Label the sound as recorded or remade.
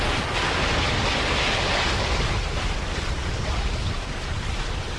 recorded